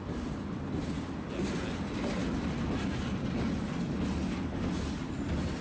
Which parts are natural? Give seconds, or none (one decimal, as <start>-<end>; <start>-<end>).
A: 0.0-5.6